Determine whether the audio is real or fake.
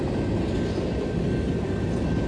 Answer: real